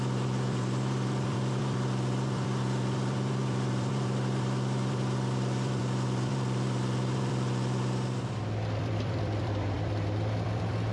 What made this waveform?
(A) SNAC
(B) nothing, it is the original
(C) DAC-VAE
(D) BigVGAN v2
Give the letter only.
D